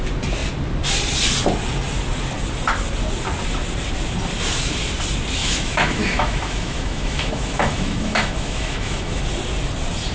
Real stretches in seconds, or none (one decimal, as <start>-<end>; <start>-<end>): 0.0-5.4; 9.2-10.1